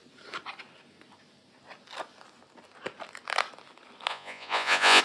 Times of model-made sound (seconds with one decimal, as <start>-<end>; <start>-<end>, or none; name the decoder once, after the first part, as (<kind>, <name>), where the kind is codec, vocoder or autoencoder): 4.1-5.0 (vocoder, Vocos)